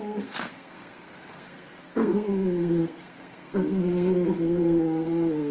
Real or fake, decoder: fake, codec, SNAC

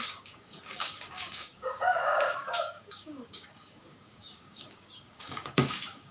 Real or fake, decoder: fake, codec, DAC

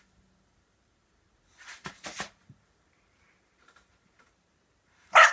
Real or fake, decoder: fake, vocoder, BigVGAN v2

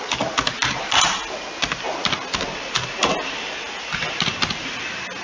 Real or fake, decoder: real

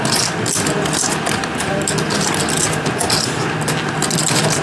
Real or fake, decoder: real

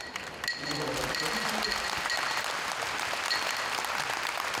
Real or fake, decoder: real